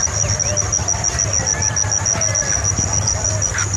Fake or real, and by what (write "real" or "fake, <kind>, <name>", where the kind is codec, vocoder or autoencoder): real